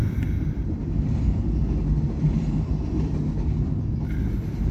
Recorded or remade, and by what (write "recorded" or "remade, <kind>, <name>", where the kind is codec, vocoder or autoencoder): recorded